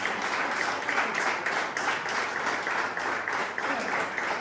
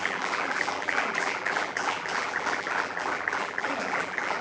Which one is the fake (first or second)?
second